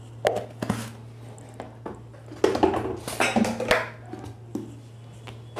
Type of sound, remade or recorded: recorded